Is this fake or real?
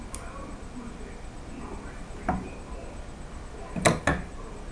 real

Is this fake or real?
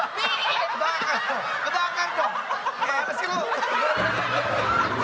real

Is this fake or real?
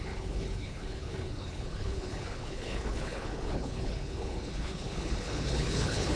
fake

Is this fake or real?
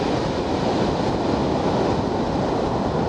real